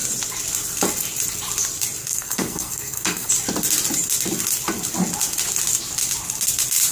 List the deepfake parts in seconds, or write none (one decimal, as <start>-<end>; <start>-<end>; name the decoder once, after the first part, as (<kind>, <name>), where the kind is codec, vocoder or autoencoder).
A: 2.0-3.3 (codec, SNAC)